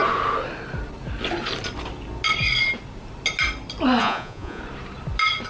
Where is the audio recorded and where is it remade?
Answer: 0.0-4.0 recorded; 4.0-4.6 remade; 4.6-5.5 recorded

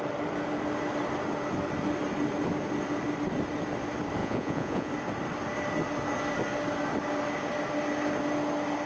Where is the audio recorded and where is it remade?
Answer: 0.0-4.2 recorded; 4.2-4.9 remade; 4.9-8.9 recorded

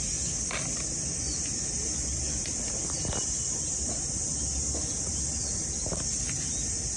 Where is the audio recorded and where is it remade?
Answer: 0.0-7.0 recorded

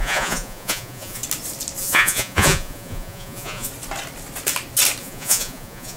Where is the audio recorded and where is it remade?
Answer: 0.0-1.2 remade; 1.2-1.8 recorded; 1.8-3.7 remade; 3.7-5.0 recorded; 5.0-6.0 remade